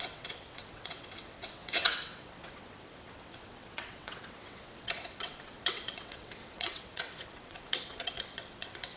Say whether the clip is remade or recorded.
remade